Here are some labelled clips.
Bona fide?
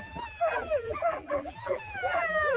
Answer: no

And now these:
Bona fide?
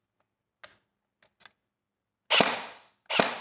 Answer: yes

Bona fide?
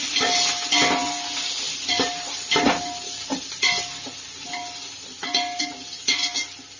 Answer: yes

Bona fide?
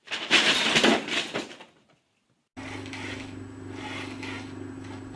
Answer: yes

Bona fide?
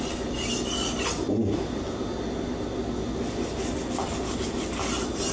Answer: yes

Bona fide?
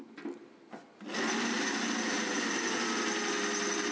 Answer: yes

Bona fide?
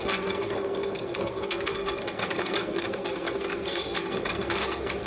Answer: no